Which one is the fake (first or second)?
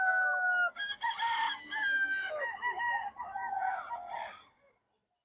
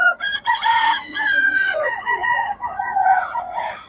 second